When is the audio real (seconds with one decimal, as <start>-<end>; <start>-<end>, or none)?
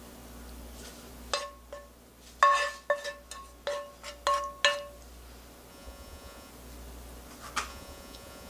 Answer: 0.0-5.7; 6.5-7.7